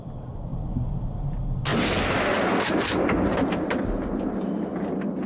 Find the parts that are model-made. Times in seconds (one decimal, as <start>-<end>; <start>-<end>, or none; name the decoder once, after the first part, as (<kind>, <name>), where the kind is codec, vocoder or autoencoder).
none